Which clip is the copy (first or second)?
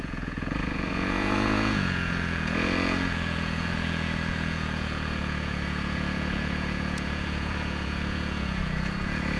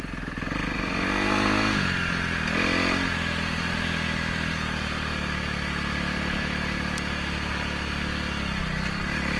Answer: first